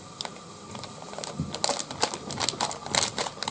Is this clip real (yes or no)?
yes